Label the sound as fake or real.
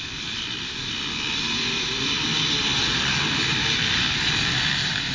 real